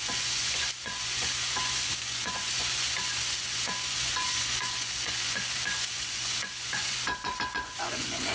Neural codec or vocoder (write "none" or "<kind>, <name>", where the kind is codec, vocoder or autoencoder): vocoder, Vocos